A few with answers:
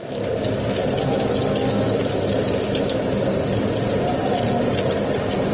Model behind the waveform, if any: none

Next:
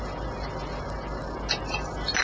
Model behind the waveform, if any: none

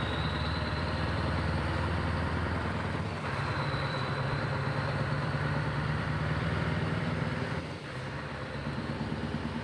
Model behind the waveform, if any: vocoder, BigVGAN v2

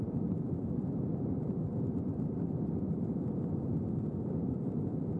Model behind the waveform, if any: vocoder, BigVGAN v2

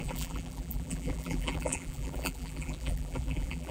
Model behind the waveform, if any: vocoder, BigVGAN v2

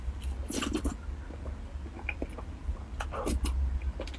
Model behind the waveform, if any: none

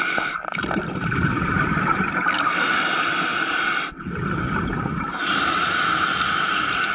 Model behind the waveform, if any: vocoder, BigVGAN v2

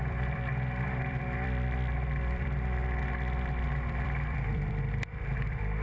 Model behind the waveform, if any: vocoder, BigVGAN v2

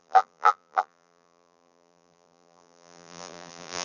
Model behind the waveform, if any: vocoder, BigVGAN v2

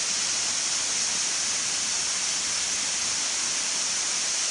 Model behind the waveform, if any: none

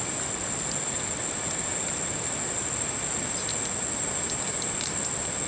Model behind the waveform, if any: none